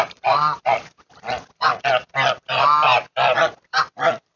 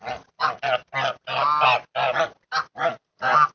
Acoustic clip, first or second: second